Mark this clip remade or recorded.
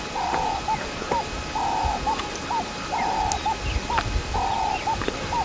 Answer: recorded